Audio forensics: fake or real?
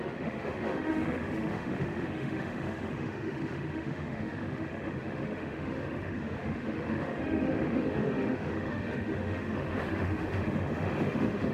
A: fake